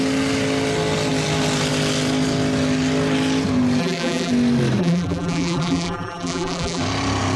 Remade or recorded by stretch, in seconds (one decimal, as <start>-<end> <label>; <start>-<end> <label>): 0.0-3.8 recorded; 3.8-4.3 remade; 4.3-4.8 recorded; 4.8-6.8 remade; 6.8-7.4 recorded